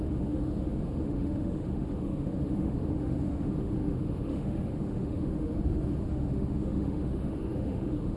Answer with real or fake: fake